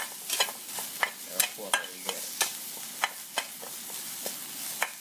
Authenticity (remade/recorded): recorded